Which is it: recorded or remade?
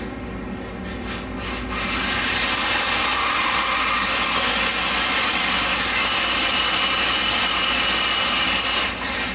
recorded